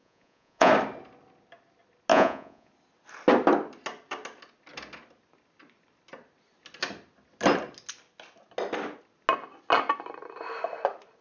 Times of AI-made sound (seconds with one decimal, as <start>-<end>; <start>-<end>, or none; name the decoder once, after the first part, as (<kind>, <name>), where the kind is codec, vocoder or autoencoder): 0.0-0.7 (vocoder, Vocos); 2.1-2.7